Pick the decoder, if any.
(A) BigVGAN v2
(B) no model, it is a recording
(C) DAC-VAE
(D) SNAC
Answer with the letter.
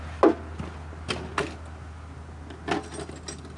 B